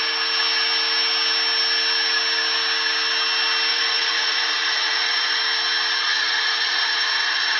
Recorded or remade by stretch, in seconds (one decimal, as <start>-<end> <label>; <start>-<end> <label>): 0.0-3.7 recorded; 3.7-5.4 remade; 5.4-6.0 recorded; 6.0-7.6 remade